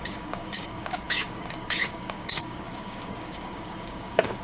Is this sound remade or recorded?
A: remade